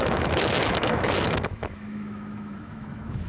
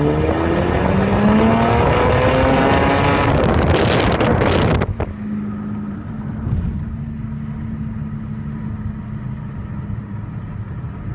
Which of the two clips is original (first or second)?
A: second